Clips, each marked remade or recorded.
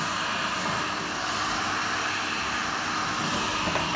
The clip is recorded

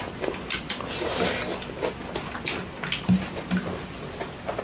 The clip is recorded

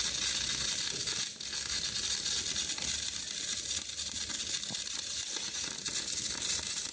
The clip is recorded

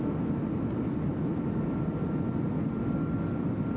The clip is recorded